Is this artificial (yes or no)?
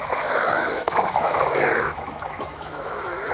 yes